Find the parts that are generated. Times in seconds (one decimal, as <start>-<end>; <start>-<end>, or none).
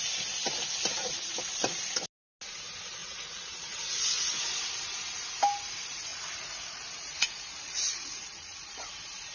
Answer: 3.0-4.4; 6.1-8.9